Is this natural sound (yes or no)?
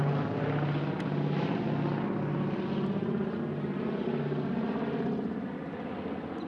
yes